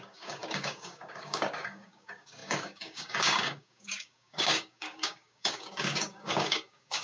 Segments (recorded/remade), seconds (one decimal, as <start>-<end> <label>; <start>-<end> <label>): 0.0-7.0 remade